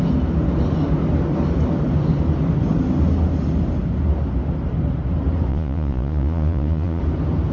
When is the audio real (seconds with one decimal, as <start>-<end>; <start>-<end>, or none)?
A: 0.0-5.5; 7.0-7.5